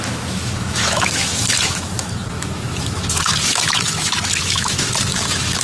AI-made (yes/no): yes